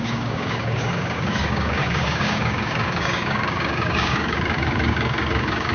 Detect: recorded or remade remade